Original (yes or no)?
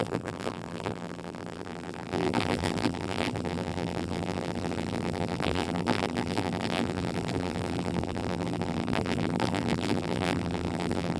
no